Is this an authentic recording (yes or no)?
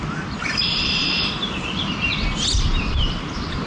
yes